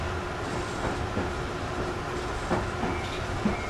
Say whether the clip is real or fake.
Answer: real